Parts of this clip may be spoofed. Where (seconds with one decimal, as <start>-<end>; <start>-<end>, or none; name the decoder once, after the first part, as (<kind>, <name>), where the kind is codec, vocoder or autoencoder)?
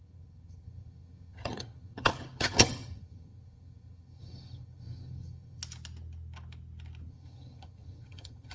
0.0-5.6 (vocoder, HiFi-GAN); 7.1-8.5